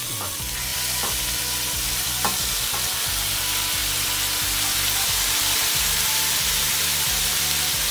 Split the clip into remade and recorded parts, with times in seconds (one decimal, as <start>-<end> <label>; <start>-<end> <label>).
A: 0.0-7.9 recorded